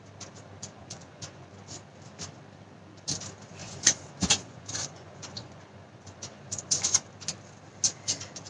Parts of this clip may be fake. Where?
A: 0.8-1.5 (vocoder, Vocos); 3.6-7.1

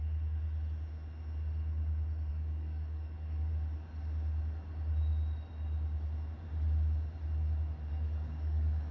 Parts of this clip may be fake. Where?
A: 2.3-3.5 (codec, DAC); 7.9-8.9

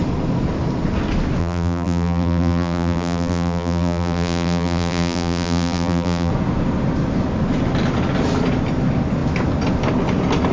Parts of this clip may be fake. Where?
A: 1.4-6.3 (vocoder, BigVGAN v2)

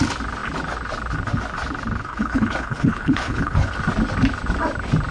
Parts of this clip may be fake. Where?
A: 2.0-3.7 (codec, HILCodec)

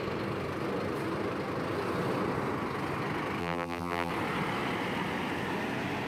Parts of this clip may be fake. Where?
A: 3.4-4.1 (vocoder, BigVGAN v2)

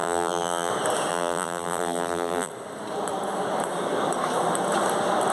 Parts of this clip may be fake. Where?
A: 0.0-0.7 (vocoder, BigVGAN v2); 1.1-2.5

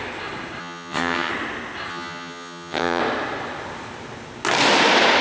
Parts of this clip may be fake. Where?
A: 0.6-1.3 (vocoder, HiFi-GAN); 1.9-3.0

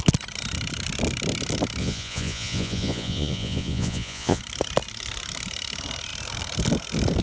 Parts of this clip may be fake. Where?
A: 1.8-4.4 (vocoder, Vocos)